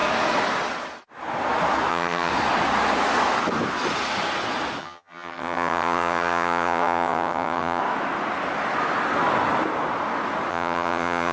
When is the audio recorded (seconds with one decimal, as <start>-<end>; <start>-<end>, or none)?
0.0-1.9; 2.3-4.8; 7.8-10.5